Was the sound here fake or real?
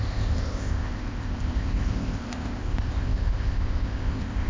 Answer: fake